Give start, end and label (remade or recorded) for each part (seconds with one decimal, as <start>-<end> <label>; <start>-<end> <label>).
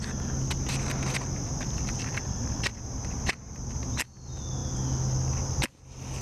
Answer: 0.0-6.2 recorded